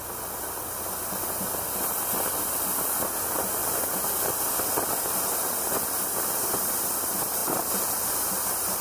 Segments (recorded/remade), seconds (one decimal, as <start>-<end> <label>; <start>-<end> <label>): 0.0-3.6 recorded; 3.6-4.1 remade; 4.1-7.4 recorded; 7.4-8.2 remade; 8.2-8.8 recorded